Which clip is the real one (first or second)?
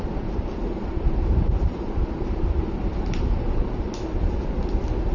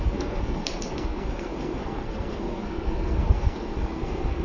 first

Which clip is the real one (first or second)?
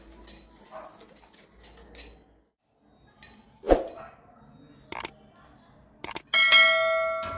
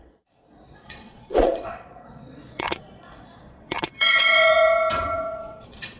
first